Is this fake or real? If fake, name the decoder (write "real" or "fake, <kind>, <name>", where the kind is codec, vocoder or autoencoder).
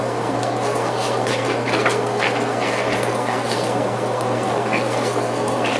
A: fake, codec, SNAC